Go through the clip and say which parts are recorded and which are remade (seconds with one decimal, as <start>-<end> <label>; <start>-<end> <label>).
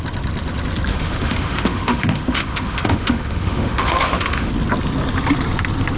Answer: 0.0-0.9 recorded; 0.9-4.5 remade; 4.5-6.0 recorded